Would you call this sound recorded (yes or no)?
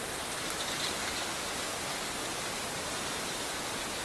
yes